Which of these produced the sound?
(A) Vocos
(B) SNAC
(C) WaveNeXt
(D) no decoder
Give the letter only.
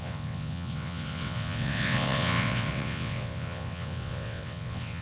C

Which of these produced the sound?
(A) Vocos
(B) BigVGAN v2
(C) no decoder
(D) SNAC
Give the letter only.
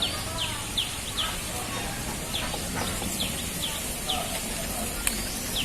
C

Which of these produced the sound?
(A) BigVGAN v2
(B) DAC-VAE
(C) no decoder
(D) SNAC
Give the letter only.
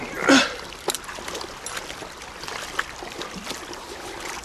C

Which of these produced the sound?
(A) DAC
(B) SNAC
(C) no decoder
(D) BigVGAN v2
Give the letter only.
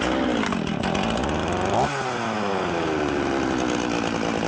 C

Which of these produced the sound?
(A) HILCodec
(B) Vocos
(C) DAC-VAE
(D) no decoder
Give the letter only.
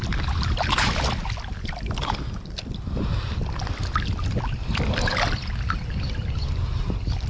D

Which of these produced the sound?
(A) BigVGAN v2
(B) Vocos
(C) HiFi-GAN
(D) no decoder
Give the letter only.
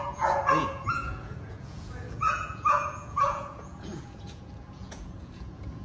B